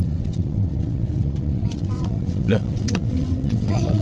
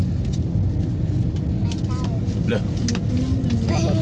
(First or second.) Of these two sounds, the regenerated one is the first